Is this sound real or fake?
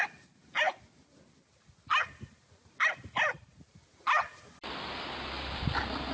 real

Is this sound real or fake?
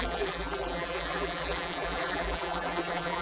fake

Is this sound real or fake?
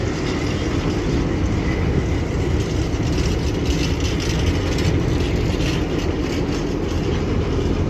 real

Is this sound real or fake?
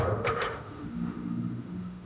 fake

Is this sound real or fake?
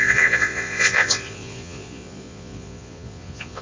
fake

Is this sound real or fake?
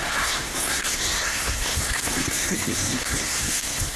fake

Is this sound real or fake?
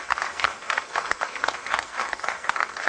fake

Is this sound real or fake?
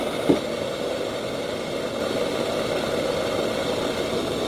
real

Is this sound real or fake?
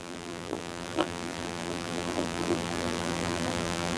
fake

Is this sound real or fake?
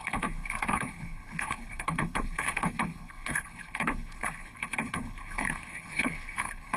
fake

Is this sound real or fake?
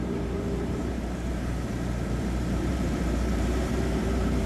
fake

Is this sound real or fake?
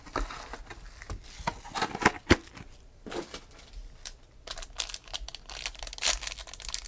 real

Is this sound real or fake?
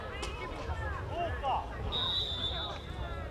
real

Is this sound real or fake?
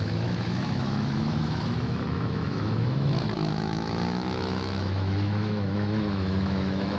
fake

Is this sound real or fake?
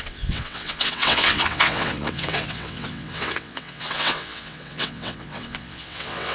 fake